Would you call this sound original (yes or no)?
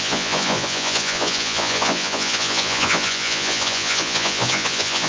no